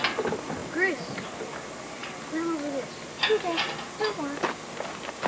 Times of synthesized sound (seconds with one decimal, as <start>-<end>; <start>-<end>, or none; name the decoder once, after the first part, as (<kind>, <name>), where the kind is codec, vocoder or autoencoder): none